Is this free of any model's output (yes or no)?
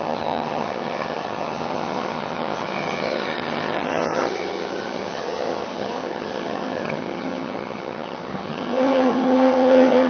no